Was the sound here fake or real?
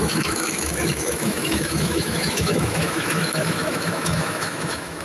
fake